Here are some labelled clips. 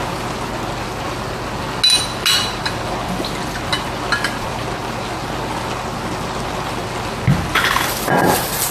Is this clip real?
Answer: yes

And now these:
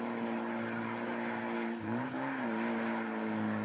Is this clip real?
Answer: yes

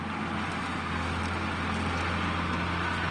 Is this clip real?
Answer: yes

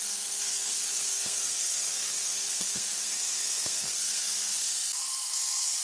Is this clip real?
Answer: no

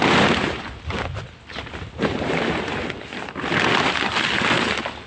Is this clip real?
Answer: yes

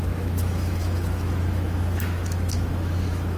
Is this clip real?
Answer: no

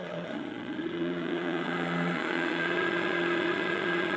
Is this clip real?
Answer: no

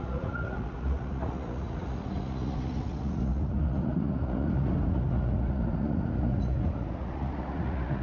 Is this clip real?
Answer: no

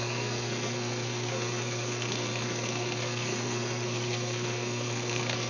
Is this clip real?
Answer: no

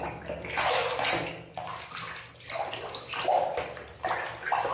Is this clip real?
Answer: yes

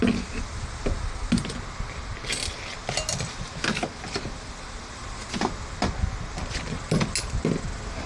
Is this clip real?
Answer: yes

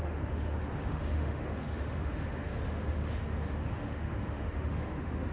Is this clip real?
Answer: no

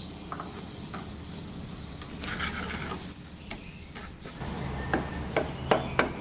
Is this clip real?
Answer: yes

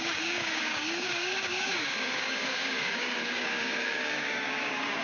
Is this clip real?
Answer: no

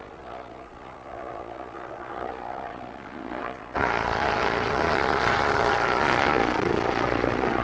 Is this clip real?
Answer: no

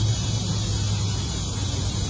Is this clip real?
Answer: yes